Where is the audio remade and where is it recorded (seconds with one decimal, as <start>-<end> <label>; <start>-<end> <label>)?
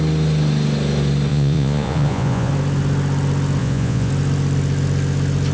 0.0-1.3 recorded; 1.3-2.5 remade; 2.5-3.6 recorded; 3.6-4.1 remade; 4.1-5.5 recorded